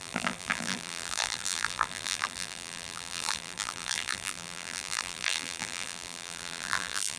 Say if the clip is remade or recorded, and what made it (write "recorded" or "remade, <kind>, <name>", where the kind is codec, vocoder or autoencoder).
remade, vocoder, BigVGAN v2